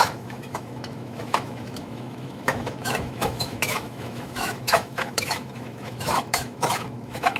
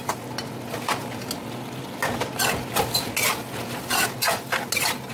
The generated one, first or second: first